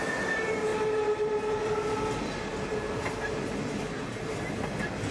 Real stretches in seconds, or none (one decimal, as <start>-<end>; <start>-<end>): 0.0-5.1